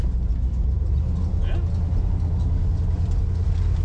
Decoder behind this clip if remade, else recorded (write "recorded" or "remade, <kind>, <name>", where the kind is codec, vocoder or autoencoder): recorded